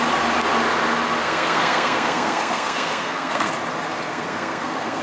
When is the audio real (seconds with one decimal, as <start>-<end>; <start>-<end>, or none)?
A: 0.0-1.2; 3.5-4.1